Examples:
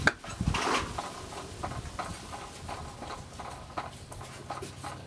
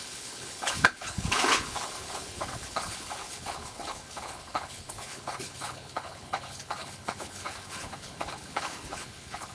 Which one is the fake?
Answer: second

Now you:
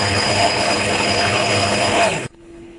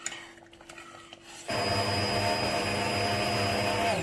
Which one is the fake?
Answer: first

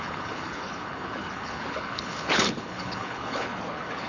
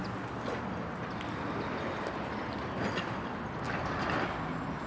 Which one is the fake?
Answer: first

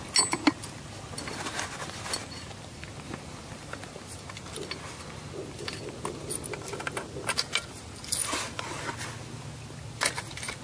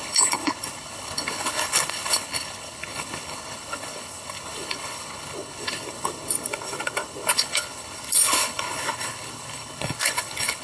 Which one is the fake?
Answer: second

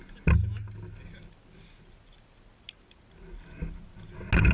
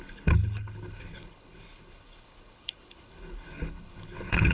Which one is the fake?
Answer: second